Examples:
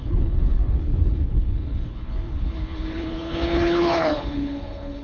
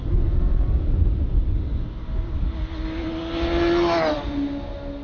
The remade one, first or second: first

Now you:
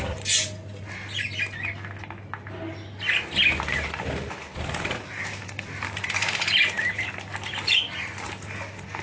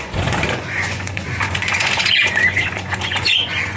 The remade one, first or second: second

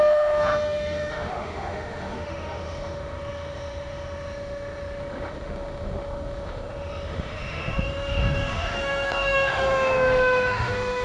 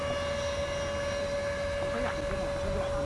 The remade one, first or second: first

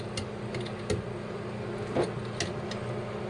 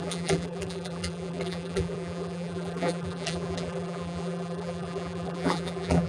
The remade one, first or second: second